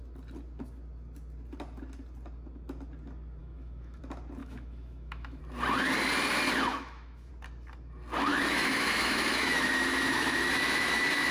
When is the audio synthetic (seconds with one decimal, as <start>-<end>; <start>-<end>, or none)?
3.4-4.0; 4.4-5.4; 6.7-7.3; 8.3-11.3